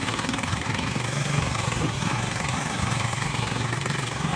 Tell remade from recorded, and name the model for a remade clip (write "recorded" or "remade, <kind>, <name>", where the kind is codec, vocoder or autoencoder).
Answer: remade, codec, SNAC